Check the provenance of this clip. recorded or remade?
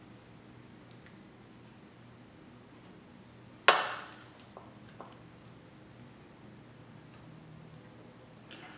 recorded